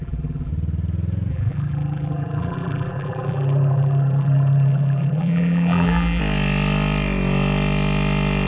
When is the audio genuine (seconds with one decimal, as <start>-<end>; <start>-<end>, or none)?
0.5-1.3; 6.2-8.5